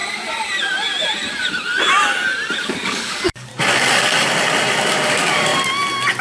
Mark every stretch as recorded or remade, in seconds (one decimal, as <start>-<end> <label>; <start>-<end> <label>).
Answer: 0.0-2.6 recorded; 2.6-3.5 remade; 3.5-5.1 recorded; 5.1-5.5 remade; 5.5-6.2 recorded